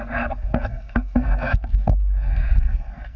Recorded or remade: remade